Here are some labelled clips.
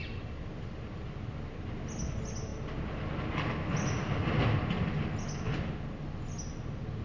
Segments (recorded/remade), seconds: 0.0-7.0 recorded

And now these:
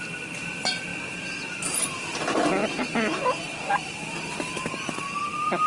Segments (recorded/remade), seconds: 0.0-0.9 remade; 0.9-1.7 recorded; 1.7-2.6 remade; 2.6-4.1 recorded; 4.1-5.7 remade